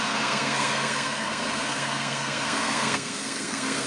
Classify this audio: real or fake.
fake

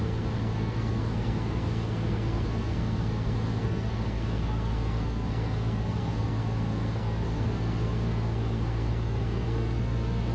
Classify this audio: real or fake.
fake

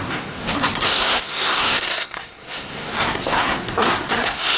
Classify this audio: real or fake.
fake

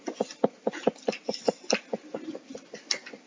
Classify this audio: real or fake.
real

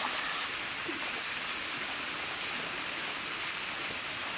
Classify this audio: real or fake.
real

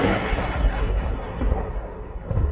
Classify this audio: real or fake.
fake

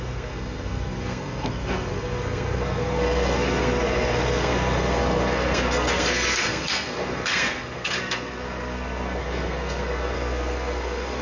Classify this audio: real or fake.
fake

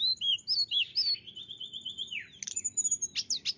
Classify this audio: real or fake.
real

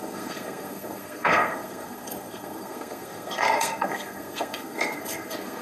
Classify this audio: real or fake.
fake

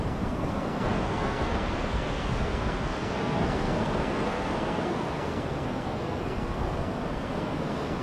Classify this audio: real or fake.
fake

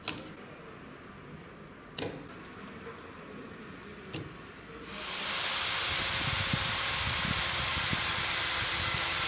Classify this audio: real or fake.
real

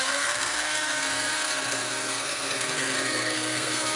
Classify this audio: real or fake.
fake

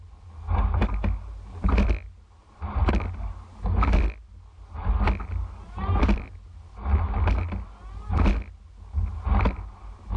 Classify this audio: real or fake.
real